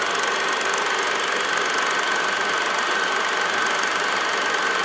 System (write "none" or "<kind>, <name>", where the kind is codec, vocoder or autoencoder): none